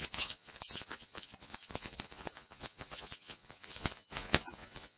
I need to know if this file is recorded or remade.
remade